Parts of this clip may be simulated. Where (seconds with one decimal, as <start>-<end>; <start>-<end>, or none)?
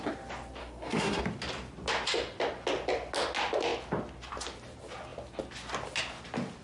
0.6-1.2